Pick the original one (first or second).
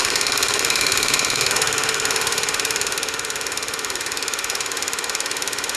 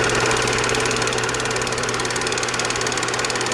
second